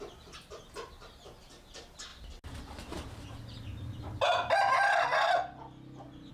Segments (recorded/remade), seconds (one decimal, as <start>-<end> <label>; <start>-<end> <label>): 0.0-6.3 recorded